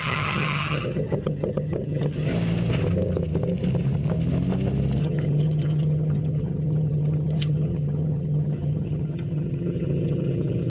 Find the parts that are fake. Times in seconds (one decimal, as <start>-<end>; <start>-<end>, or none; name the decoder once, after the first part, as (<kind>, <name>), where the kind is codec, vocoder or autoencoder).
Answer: 0.0-2.3 (vocoder, HiFi-GAN); 5.0-10.7